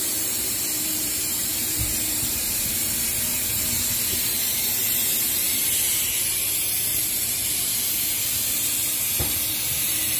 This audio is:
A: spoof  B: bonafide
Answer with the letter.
A